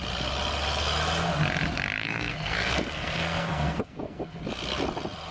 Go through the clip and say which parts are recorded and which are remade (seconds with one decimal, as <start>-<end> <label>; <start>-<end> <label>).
0.0-2.0 recorded; 2.0-4.4 remade; 4.4-5.3 recorded

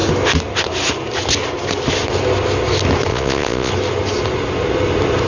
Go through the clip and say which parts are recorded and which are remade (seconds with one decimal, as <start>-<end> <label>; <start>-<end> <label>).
0.0-3.1 recorded; 3.1-3.7 remade; 3.7-5.3 recorded

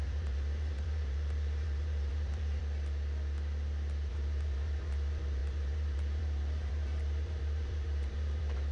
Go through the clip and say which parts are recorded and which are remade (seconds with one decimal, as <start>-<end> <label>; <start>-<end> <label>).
0.0-2.6 remade; 2.6-4.1 recorded; 4.1-8.7 remade